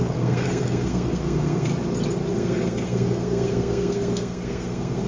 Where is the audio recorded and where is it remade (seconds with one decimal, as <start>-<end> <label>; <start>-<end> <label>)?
0.0-1.7 remade; 1.7-2.3 recorded; 2.3-5.1 remade